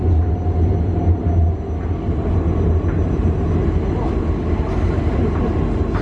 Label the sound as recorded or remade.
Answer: recorded